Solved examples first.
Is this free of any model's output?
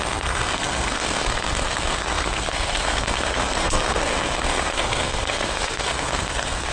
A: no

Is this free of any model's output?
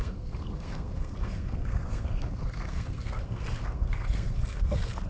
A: no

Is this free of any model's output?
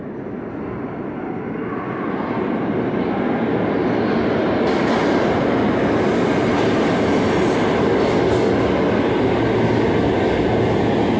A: yes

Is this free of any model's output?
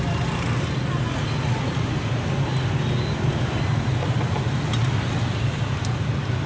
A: yes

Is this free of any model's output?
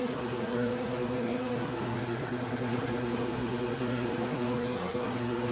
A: no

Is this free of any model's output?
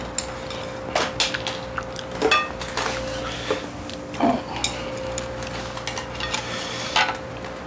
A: yes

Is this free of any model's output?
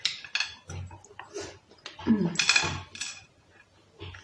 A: yes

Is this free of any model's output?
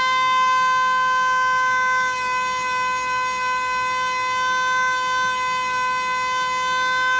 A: yes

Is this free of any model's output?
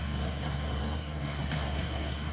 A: no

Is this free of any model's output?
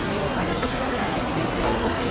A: no